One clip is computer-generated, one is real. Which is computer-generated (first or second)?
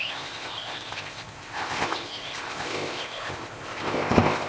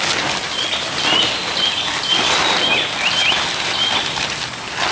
first